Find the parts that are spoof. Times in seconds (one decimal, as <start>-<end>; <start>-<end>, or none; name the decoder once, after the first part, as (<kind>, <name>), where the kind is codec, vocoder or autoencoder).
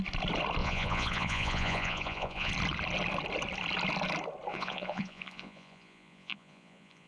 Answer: 0.6-2.5 (vocoder, Vocos); 4.5-7.1